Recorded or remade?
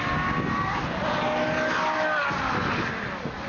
recorded